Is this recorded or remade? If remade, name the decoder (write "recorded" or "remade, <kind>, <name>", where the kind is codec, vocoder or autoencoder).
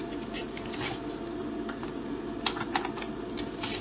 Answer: recorded